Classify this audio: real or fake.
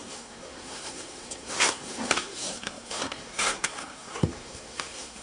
fake